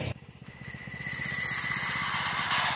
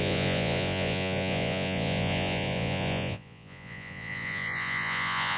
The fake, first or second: second